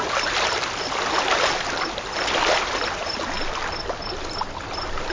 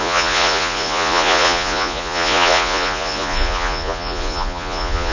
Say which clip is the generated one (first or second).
second